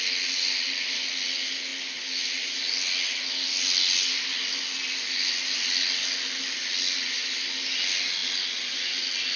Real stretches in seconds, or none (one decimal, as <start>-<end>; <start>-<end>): 0.0-9.4